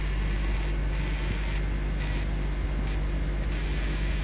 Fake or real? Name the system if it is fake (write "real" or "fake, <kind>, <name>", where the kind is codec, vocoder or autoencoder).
real